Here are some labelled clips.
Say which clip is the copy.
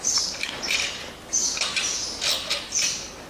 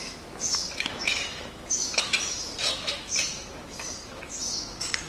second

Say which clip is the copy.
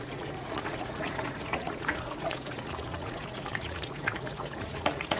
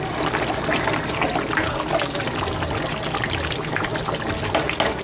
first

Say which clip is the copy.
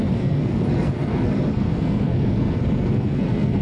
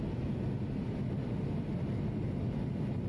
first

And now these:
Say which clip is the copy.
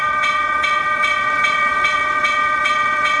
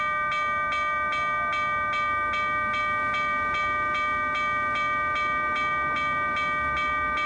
first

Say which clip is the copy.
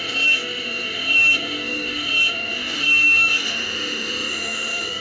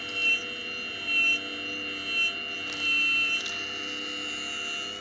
first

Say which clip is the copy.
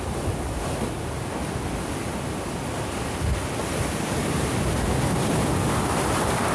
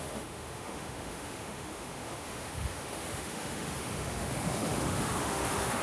second